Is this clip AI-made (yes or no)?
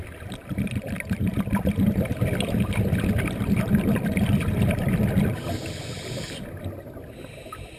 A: no